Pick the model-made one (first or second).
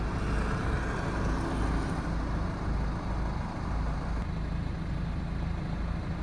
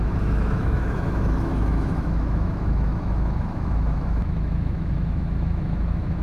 second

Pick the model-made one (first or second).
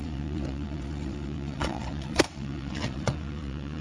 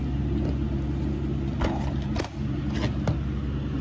first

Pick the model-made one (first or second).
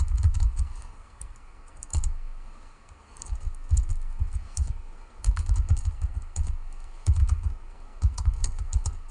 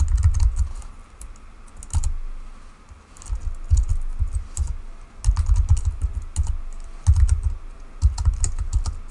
first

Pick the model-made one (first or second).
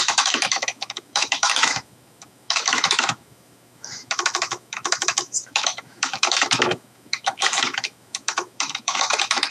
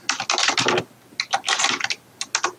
first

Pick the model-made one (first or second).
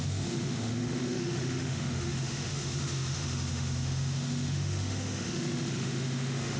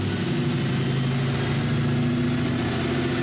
first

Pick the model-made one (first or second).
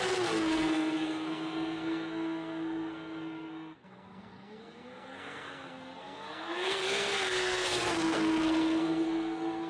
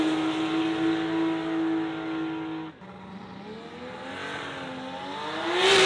first